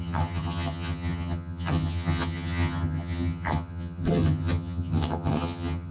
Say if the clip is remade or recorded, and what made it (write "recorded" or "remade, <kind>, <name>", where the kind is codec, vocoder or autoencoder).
remade, vocoder, HiFi-GAN